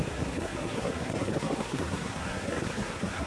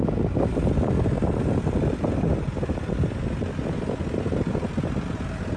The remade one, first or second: first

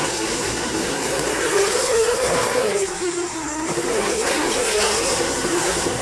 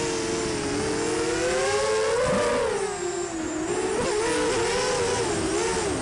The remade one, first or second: first